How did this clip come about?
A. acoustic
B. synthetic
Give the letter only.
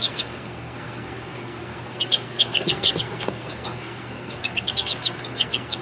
B